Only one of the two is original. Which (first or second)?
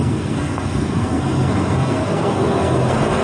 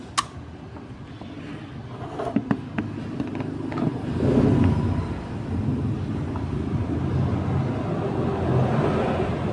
second